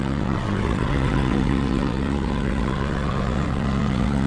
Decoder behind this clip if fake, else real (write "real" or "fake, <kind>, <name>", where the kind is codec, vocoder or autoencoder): fake, vocoder, WaveNeXt